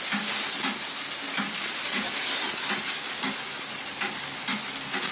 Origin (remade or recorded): recorded